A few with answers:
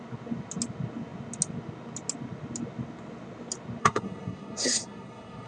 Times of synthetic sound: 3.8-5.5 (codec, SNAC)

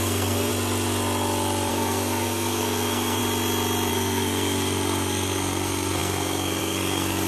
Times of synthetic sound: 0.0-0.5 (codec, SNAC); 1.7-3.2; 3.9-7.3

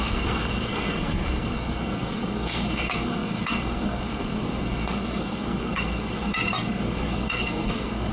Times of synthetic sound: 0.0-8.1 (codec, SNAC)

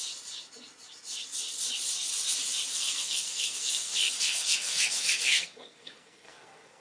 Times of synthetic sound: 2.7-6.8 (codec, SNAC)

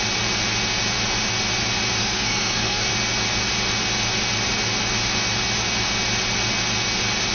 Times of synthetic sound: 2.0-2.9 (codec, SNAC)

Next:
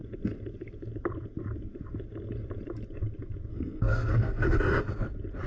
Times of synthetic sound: 3.5-4.6 (codec, SNAC)